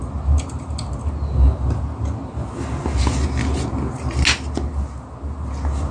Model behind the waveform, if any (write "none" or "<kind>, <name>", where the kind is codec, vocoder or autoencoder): none